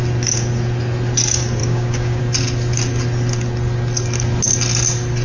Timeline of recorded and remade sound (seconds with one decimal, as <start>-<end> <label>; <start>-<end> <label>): 0.0-1.6 recorded; 1.6-2.2 remade; 2.2-5.2 recorded